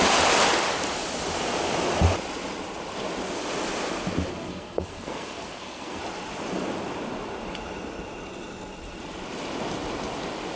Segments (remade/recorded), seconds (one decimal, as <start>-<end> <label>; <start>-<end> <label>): 0.0-4.3 recorded; 4.3-6.0 remade; 6.0-10.6 recorded